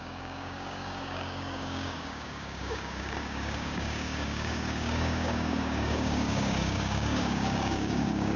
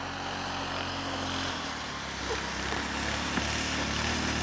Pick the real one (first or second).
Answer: second